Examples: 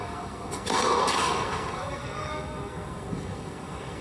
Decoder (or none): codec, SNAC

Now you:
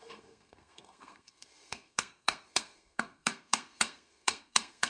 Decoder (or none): codec, SNAC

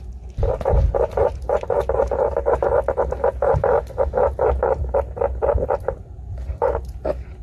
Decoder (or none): none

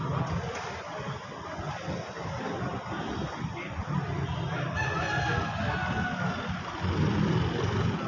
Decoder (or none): none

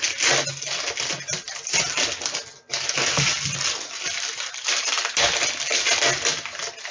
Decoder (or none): none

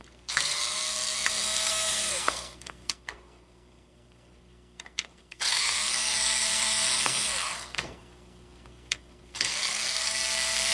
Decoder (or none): codec, SNAC